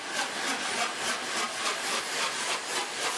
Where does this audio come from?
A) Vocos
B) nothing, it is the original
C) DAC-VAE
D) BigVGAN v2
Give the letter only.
B